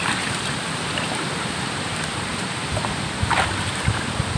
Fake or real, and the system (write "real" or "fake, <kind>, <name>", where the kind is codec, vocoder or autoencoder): fake, vocoder, BigVGAN v2